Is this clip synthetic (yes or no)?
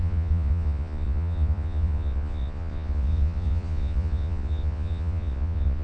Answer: yes